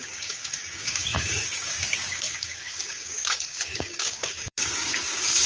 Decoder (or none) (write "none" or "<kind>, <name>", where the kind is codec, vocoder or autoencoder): codec, DAC